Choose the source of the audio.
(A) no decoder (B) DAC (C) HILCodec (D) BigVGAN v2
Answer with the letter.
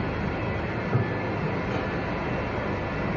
A